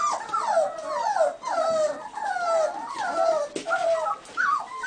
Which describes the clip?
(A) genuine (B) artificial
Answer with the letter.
A